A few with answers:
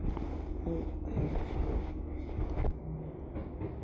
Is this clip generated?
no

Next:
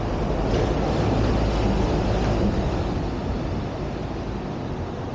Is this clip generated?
no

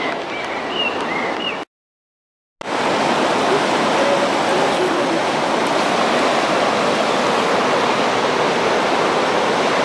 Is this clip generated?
no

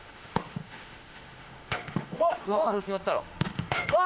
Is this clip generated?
yes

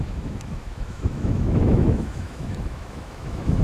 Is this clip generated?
yes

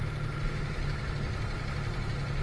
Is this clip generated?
no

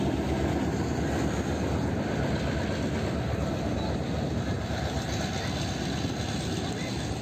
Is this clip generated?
no